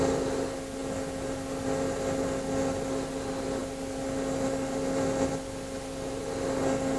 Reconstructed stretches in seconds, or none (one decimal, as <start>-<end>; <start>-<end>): none